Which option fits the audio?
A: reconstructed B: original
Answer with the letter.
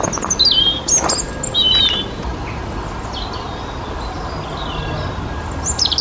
B